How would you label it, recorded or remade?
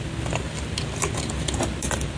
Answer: recorded